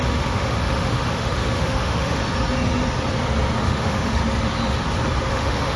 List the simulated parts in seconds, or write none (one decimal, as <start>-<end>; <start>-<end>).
0.0-2.2; 3.6-4.2; 5.3-5.8